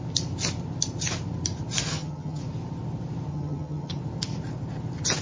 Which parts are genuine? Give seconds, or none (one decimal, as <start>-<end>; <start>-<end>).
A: 0.0-1.9; 2.4-3.3; 4.0-5.2